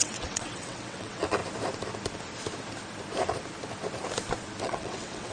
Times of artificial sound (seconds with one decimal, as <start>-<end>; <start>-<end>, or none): 0.0-1.4; 4.6-5.3